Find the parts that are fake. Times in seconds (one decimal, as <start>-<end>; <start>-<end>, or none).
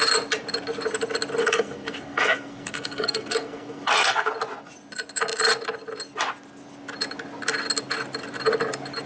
1.4-4.3